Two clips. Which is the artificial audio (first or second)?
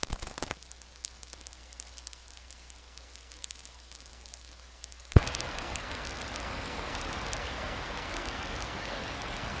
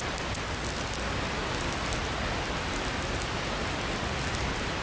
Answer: first